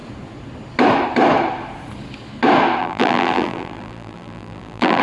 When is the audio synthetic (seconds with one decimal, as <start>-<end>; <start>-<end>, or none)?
2.8-5.0